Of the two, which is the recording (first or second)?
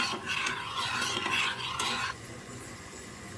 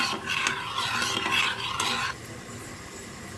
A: second